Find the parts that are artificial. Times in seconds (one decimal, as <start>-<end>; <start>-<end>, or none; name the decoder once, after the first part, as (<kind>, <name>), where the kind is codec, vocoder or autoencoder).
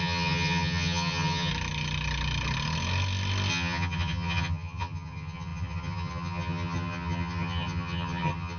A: 0.0-1.5 (vocoder, HiFi-GAN); 3.5-8.6